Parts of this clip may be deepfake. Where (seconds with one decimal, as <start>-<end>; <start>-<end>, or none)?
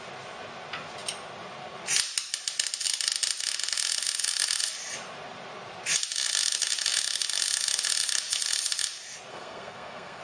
9.3-10.2